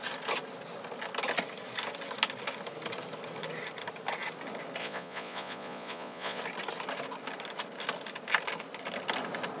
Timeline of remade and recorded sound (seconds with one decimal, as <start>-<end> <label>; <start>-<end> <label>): 0.0-4.8 recorded; 4.8-6.4 remade; 6.4-9.6 recorded